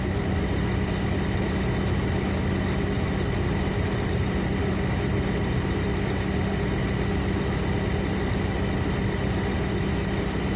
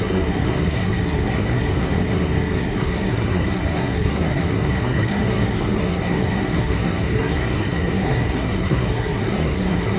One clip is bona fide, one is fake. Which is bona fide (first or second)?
first